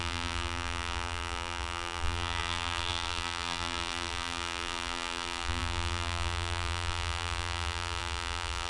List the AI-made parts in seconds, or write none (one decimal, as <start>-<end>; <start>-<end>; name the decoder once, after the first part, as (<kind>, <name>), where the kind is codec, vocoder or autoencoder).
0.0-8.7 (vocoder, BigVGAN v2)